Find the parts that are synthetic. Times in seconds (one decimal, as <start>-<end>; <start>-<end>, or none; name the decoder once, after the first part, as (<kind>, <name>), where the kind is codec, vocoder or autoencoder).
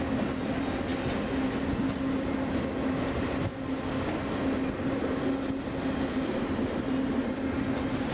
none